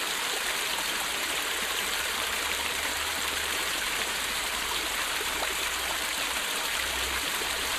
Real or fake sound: fake